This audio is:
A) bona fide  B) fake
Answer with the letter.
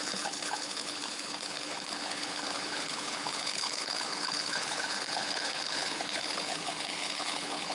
B